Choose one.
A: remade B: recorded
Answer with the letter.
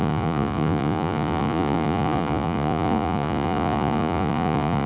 A